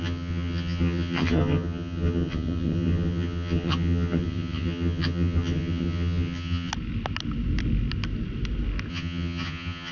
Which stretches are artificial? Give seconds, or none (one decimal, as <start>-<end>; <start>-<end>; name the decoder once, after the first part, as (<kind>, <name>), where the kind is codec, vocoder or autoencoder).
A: 0.0-6.7 (vocoder, HiFi-GAN); 8.9-9.9